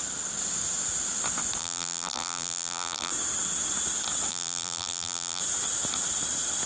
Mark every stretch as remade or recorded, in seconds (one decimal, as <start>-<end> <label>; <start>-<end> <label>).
0.0-1.6 recorded; 1.6-3.1 remade; 3.1-4.3 recorded; 4.3-5.4 remade; 5.4-6.7 recorded